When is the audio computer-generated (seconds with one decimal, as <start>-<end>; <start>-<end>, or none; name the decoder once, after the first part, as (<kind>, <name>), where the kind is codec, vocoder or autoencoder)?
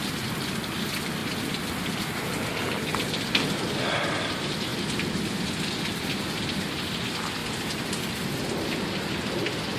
none